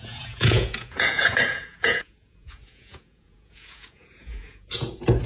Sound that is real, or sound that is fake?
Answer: fake